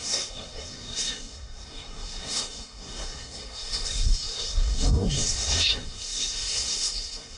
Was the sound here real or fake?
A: fake